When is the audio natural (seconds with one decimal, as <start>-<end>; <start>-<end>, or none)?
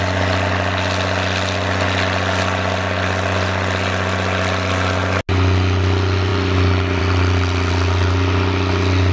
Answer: 0.0-9.1